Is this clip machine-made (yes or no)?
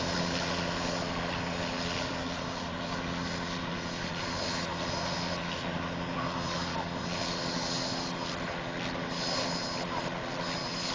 no